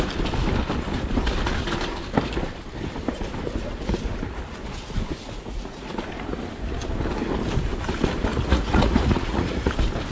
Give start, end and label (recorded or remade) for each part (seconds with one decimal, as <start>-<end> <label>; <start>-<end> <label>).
0.0-5.1 recorded; 5.1-5.9 remade; 5.9-8.3 recorded; 8.3-9.7 remade; 9.7-10.1 recorded

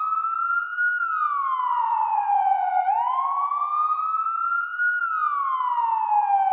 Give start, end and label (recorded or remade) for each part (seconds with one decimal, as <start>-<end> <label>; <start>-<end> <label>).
0.0-1.7 recorded; 1.7-2.9 remade; 2.9-6.5 recorded